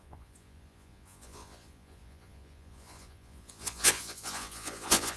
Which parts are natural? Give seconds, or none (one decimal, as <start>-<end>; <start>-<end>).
none